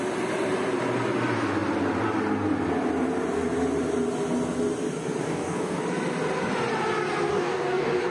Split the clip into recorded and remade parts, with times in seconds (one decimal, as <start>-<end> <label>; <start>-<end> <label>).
0.0-5.2 recorded; 5.2-5.8 remade; 5.8-7.3 recorded; 7.3-8.1 remade